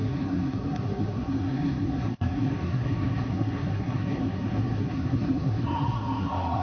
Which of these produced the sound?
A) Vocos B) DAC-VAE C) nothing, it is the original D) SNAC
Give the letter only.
D